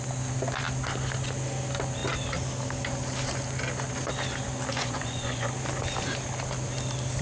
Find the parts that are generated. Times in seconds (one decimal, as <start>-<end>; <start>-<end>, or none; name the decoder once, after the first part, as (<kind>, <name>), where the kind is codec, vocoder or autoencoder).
4.7-5.5 (vocoder, Vocos)